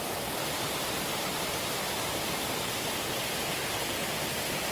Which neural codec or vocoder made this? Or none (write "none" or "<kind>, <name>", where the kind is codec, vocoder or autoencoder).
none